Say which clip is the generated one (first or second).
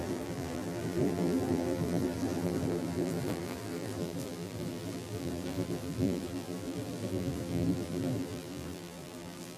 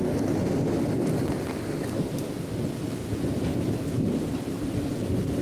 first